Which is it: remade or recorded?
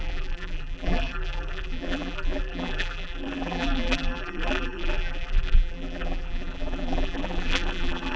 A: remade